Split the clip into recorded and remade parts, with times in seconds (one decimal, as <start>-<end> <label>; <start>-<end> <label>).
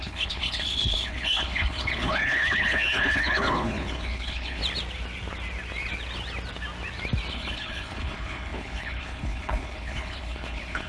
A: 0.0-4.6 remade; 4.6-7.3 recorded; 7.3-10.9 remade